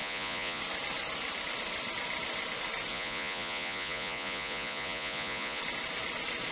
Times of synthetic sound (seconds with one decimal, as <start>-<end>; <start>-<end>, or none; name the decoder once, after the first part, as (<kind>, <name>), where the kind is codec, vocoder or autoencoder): 0.0-0.6 (vocoder, Vocos); 2.9-5.6